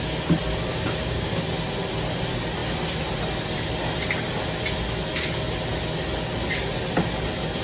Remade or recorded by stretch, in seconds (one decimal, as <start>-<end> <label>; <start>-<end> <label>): 0.0-0.7 recorded; 0.7-1.4 remade; 1.4-7.6 recorded